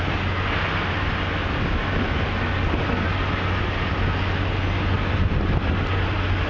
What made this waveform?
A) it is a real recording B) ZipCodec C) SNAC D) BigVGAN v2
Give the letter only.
A